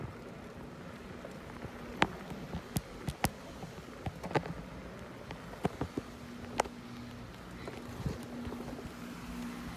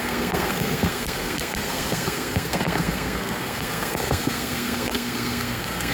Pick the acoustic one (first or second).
first